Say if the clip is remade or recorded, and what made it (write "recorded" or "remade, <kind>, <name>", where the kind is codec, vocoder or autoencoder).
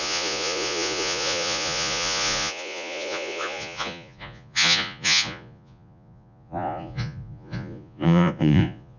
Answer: remade, vocoder, Vocos